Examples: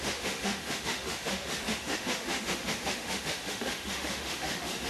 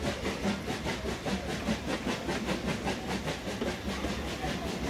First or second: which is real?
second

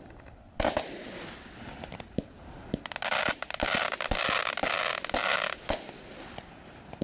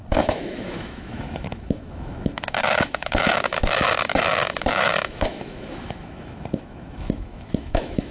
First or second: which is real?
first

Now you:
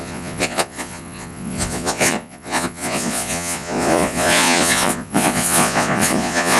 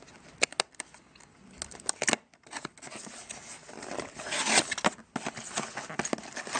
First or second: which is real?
second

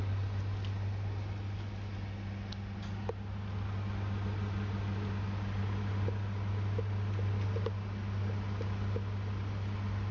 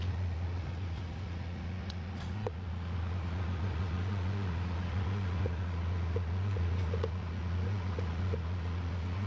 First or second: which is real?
first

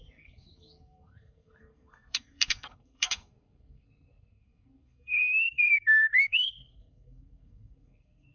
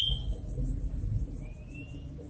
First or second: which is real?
second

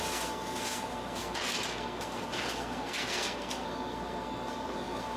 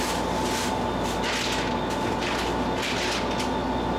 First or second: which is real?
second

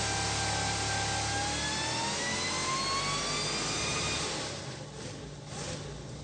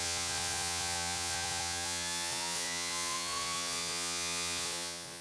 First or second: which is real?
first